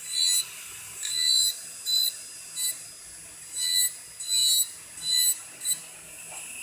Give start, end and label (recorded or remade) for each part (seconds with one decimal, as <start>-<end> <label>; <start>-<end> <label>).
0.0-6.6 recorded